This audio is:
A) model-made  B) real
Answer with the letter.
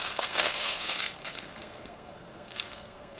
A